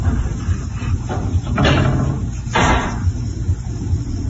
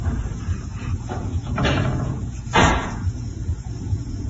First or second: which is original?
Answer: first